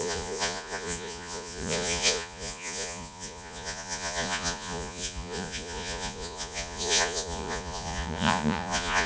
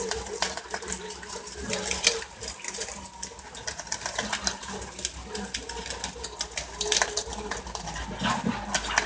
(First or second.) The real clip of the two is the second